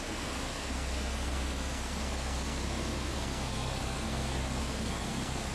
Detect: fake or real fake